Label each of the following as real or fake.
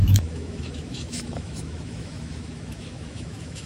fake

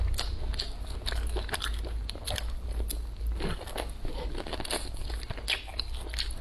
real